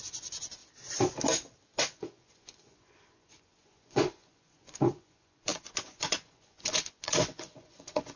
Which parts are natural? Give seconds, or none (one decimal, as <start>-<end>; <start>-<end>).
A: 0.6-1.8